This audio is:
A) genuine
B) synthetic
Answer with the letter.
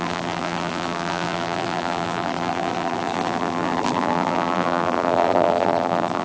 B